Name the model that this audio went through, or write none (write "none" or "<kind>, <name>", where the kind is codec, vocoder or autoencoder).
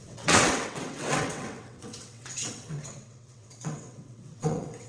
vocoder, WaveNeXt